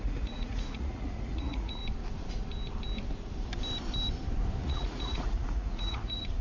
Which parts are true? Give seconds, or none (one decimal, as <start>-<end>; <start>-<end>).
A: 1.8-4.6